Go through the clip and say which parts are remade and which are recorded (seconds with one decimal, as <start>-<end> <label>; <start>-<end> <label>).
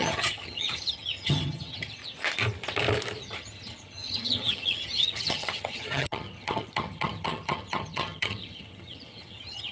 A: 0.0-2.0 remade; 2.0-3.2 recorded; 3.2-9.7 remade